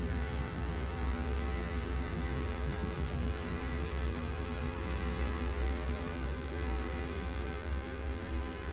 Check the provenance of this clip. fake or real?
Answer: fake